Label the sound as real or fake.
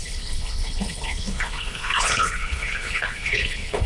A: fake